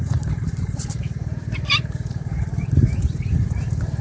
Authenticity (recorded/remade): remade